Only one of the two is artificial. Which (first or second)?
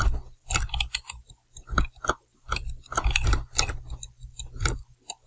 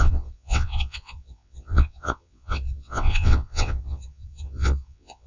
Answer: second